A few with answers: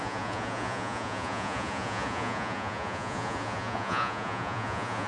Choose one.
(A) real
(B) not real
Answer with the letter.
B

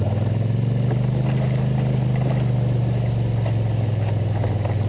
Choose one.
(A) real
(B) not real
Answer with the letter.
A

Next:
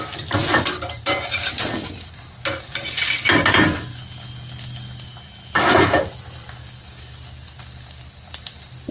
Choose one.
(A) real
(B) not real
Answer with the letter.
A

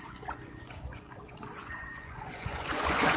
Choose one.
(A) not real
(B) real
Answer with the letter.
A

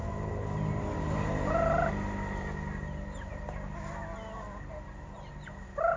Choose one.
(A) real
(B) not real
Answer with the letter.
A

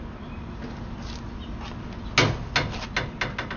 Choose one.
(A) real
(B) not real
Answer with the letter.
A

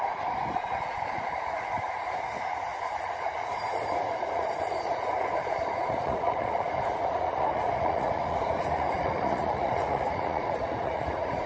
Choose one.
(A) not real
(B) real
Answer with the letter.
A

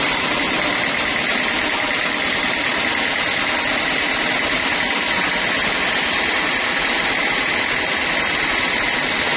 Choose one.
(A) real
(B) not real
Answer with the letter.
A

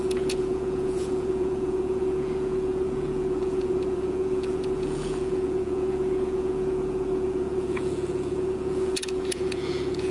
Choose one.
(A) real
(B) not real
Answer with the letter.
B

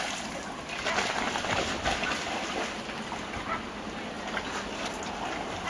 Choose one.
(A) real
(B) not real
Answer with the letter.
A